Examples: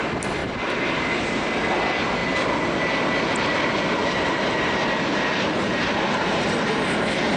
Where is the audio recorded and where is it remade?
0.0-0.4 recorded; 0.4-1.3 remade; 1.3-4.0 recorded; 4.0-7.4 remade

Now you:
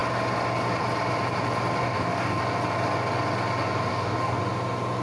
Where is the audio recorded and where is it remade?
0.0-1.8 recorded; 1.8-2.4 remade; 2.4-3.9 recorded; 3.9-4.4 remade; 4.4-5.0 recorded